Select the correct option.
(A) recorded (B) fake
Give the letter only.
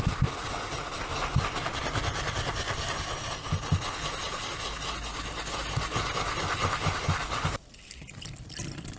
A